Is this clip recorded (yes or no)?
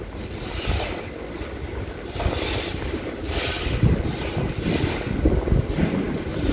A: yes